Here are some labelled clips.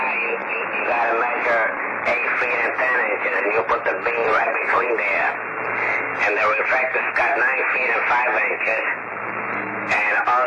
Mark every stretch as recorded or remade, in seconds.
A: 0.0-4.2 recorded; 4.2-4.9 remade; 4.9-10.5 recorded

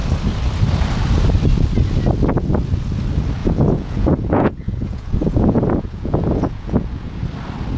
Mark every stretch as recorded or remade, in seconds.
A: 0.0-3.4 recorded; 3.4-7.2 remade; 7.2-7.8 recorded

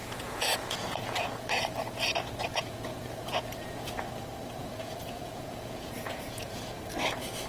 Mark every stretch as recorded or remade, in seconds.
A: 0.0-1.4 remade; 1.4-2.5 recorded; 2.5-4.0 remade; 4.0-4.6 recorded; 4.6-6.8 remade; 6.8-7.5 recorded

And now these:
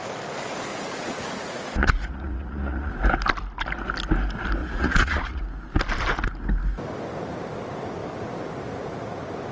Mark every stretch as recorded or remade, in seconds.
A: 0.0-0.7 recorded; 0.7-2.9 remade; 2.9-4.6 recorded; 4.6-5.4 remade; 5.4-9.5 recorded

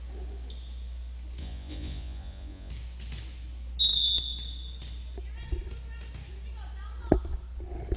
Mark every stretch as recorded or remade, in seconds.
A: 0.0-1.4 recorded; 1.4-2.7 remade; 2.7-8.0 recorded